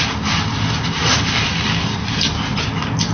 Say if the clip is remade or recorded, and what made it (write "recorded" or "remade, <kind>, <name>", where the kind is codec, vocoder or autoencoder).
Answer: recorded